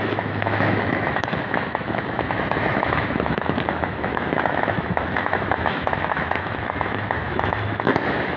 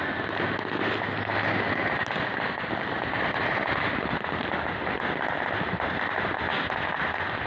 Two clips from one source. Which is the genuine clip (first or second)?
second